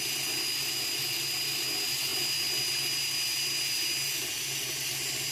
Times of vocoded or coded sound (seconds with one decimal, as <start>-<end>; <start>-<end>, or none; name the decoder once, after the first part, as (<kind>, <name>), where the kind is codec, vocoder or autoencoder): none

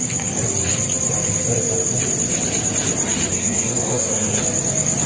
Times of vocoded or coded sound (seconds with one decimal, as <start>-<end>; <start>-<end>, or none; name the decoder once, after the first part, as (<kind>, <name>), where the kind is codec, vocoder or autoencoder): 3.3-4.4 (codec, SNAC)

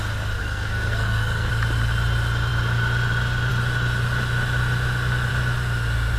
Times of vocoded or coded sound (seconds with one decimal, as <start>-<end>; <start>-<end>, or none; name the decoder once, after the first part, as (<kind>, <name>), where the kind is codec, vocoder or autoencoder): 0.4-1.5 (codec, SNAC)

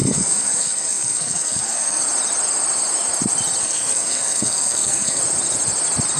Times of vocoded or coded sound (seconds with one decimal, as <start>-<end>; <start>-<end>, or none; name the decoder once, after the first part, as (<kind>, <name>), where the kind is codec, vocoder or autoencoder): 0.0-2.0 (codec, SNAC); 3.6-5.2

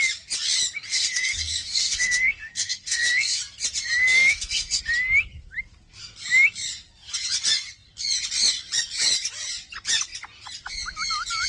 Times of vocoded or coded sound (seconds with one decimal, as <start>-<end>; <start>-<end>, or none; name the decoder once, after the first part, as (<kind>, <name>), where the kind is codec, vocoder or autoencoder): 0.9-3.4 (codec, SNAC); 4.0-4.8

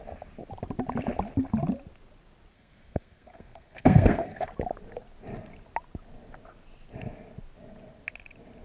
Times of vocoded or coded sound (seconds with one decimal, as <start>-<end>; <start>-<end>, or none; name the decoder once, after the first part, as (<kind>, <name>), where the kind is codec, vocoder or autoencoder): 2.5-4.5 (codec, SNAC)

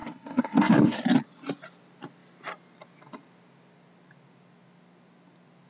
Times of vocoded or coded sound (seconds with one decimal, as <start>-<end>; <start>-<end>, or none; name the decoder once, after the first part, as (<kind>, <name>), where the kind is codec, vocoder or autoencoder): 0.0-1.0 (codec, SNAC)